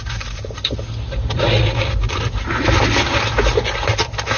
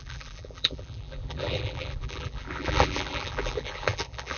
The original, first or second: first